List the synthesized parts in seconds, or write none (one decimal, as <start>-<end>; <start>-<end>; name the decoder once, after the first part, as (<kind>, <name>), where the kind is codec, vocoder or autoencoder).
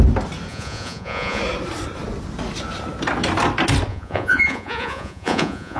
0.5-1.4 (vocoder, Vocos); 3.9-5.8